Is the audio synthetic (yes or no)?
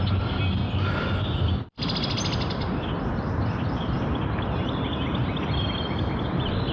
no